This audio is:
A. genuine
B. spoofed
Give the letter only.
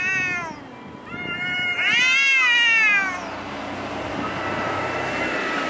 A